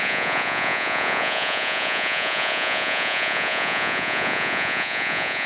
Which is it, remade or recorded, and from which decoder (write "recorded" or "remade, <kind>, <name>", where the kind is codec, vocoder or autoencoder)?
remade, vocoder, Vocos